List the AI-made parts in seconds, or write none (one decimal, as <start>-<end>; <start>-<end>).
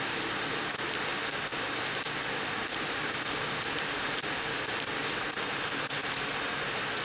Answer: none